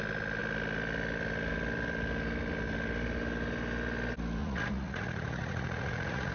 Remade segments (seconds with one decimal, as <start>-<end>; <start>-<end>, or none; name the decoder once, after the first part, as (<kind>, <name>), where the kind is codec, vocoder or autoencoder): 4.4-6.3 (vocoder, Vocos)